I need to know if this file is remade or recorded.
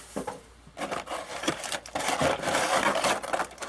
remade